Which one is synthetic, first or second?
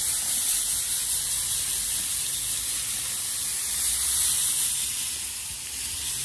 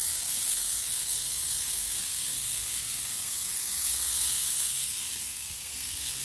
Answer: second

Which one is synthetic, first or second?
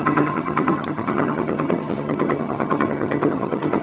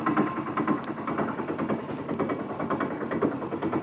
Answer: first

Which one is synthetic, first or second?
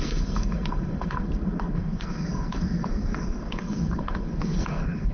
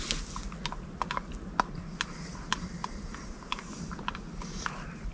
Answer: first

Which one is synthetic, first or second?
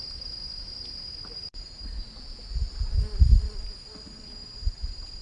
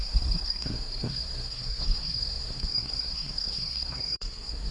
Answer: second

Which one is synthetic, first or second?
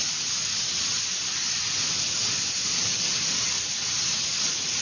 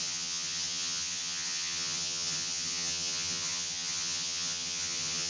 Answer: second